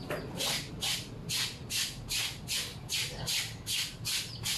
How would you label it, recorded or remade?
recorded